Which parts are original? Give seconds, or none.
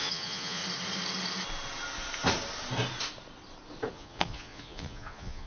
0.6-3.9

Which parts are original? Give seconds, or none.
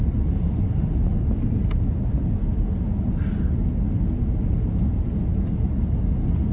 0.0-6.5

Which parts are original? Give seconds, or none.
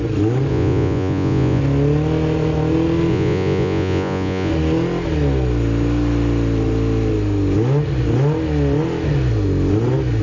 0.0-0.5; 1.6-3.1; 4.5-10.2